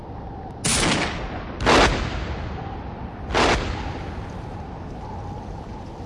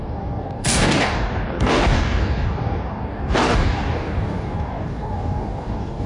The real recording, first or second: first